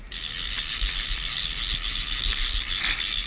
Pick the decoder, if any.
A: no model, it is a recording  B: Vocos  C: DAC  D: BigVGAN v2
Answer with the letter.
A